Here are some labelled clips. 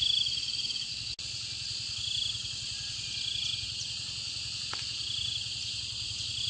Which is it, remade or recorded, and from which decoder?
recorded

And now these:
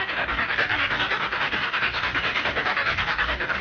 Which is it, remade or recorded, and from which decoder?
remade, codec, DAC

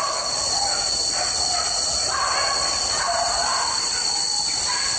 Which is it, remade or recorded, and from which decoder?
recorded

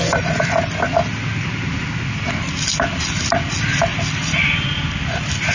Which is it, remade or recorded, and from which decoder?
recorded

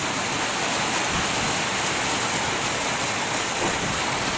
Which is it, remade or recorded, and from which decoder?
recorded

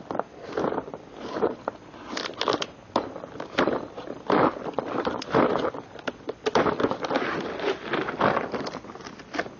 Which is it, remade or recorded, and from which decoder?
recorded